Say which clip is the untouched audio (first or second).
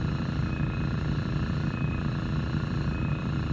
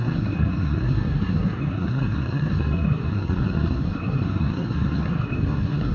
first